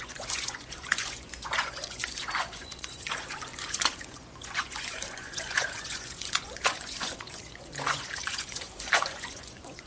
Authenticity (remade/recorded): remade